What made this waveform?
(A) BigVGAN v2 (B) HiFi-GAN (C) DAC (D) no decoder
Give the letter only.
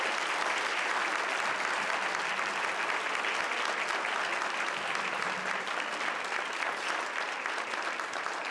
A